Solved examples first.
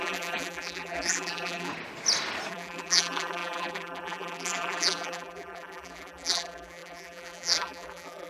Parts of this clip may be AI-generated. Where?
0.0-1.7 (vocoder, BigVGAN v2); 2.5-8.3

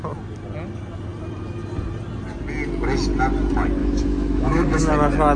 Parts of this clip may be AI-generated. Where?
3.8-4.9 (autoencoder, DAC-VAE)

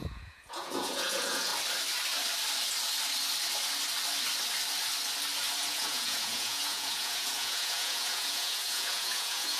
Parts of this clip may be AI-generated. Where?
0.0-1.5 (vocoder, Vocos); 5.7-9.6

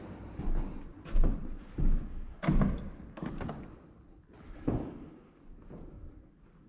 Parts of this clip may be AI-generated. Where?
none

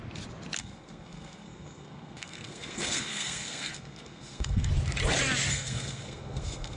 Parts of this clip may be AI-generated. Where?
0.6-4.7 (codec, SNAC); 5.5-6.8